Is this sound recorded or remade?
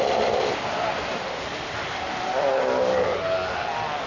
recorded